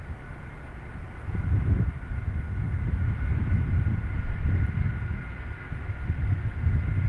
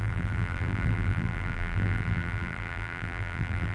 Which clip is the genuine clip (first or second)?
first